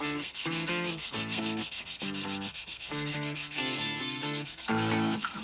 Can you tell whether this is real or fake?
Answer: fake